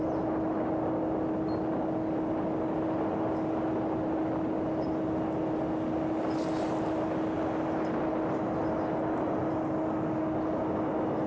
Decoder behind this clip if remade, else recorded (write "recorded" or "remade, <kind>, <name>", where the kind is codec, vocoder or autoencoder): recorded